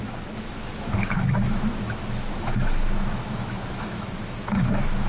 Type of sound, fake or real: fake